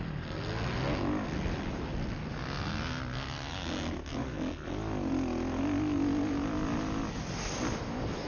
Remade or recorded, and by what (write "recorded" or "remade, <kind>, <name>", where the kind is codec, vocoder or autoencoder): recorded